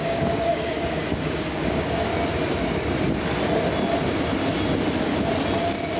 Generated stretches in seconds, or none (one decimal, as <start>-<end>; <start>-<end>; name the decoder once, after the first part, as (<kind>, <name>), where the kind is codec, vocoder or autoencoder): 0.0-2.1 (codec, DAC)

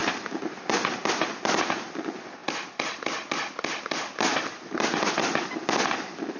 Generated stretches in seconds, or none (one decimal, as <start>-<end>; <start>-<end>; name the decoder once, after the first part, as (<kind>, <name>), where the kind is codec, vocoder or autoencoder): none

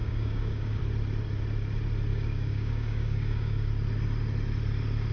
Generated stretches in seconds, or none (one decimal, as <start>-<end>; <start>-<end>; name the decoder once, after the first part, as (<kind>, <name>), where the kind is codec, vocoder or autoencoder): 0.0-0.8 (codec, DAC); 2.1-3.7

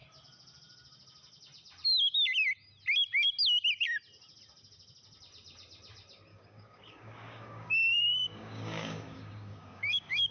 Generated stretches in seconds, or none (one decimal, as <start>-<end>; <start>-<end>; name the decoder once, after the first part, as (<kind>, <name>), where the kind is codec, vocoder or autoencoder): 6.3-10.3 (codec, DAC)

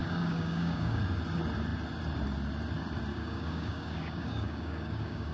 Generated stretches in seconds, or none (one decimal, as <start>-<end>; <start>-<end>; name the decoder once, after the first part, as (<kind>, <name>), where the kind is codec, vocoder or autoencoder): 0.0-1.0 (codec, DAC); 3.1-5.3